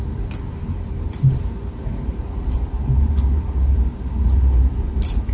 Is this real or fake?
fake